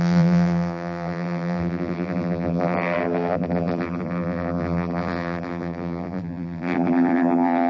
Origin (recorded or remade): remade